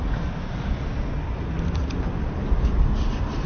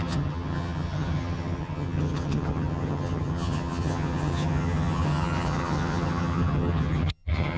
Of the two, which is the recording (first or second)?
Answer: first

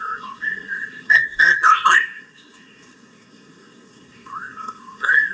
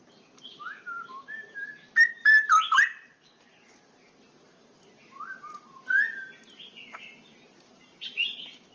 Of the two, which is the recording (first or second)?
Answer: second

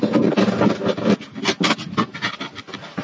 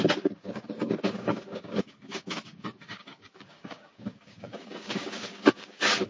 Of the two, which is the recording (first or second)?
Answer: first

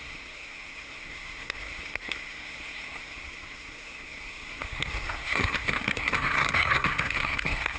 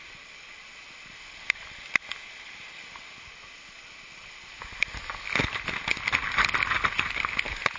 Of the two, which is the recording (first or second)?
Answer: second